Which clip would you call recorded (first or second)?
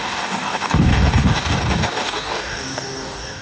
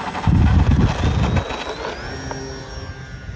second